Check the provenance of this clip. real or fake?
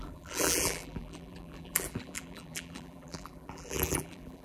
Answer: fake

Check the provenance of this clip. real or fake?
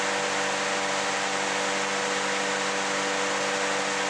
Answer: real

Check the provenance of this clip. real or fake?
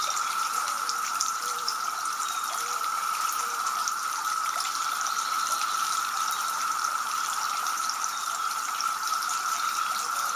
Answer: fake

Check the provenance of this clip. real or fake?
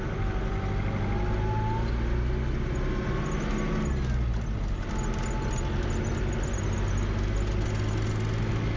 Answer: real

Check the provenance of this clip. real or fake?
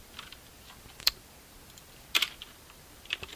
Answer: fake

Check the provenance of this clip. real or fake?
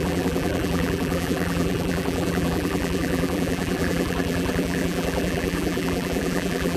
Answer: fake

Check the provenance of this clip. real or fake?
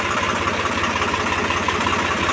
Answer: fake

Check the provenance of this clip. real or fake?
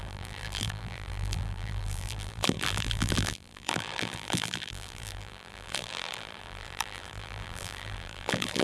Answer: fake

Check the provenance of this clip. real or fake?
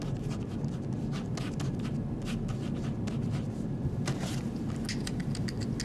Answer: real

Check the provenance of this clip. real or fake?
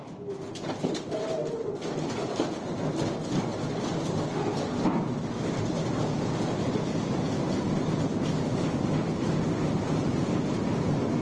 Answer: real